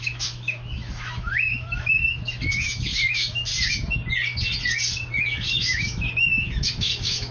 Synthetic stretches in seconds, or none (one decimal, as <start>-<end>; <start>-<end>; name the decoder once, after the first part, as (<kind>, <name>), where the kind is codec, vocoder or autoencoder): 0.0-3.5 (autoencoder, DAC-VAE); 5.2-7.3